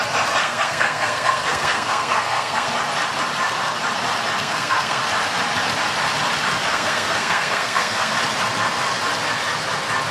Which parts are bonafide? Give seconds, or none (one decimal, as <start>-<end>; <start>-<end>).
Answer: 0.0-0.4; 2.7-4.4; 5.0-6.7; 8.1-10.1